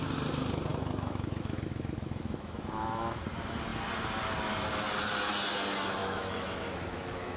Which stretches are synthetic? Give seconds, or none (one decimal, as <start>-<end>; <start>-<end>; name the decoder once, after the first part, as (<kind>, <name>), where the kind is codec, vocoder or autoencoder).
0.7-3.2 (autoencoder, DAC-VAE); 6.0-7.4